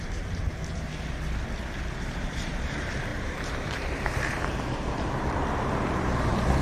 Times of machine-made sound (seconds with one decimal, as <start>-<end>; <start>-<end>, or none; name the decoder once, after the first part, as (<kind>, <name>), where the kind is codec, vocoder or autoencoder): 0.0-0.9 (vocoder, BigVGAN v2); 1.8-6.6

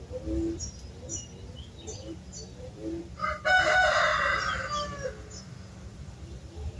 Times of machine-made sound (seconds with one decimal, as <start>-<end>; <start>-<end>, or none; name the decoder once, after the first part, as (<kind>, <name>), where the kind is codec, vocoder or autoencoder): 0.0-6.8 (vocoder, BigVGAN v2)

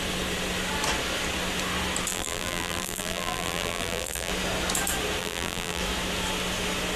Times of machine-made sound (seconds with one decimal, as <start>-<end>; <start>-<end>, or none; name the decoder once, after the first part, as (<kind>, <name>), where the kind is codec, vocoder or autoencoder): 2.1-4.3 (vocoder, BigVGAN v2); 5.2-5.8

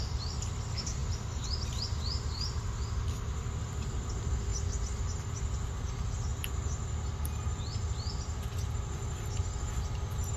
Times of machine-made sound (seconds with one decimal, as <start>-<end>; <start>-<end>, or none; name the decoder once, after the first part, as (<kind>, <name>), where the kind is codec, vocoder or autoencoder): 0.0-6.3 (vocoder, BigVGAN v2); 9.6-10.4

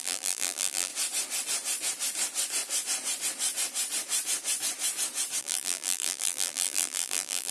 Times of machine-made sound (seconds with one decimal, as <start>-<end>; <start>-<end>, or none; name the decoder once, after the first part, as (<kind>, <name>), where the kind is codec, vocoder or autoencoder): 0.0-0.9 (vocoder, BigVGAN v2); 5.4-7.5

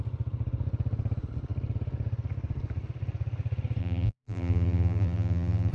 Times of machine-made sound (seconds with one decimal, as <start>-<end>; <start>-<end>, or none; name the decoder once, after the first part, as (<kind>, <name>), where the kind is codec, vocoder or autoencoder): 3.8-5.7 (vocoder, BigVGAN v2)

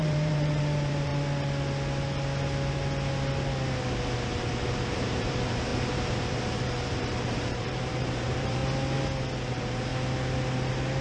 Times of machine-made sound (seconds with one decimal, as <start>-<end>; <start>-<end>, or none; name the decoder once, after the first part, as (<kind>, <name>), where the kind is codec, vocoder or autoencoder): 0.0-1.1 (vocoder, BigVGAN v2); 4.9-8.6; 9.5-9.9

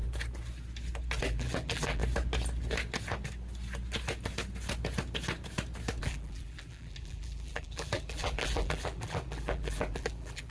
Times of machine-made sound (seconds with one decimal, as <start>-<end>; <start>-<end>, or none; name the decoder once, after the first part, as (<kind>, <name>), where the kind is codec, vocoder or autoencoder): 1.2-2.0 (vocoder, BigVGAN v2); 6.0-10.5